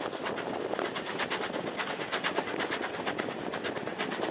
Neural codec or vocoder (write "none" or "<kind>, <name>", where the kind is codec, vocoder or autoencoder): none